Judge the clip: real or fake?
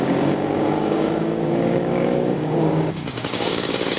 fake